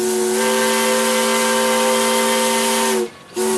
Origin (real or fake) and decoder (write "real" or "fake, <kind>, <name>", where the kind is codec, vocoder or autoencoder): real